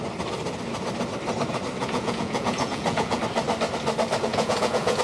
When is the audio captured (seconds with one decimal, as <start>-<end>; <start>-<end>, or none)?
0.0-1.8; 3.2-4.3